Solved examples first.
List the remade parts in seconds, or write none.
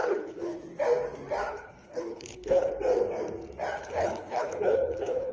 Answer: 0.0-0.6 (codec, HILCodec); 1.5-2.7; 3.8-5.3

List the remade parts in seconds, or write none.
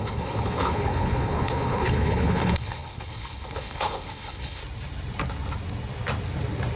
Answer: 0.0-4.6 (codec, HILCodec)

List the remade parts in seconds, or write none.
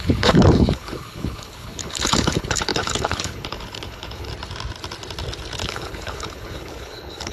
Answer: 0.0-4.3 (codec, HILCodec); 5.6-7.3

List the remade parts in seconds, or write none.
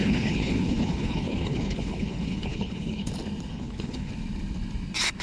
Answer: 0.0-3.1 (codec, HILCodec); 3.5-4.1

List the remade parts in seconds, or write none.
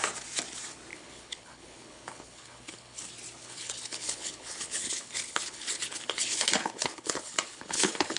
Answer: 0.9-3.0 (codec, HILCodec); 3.4-8.2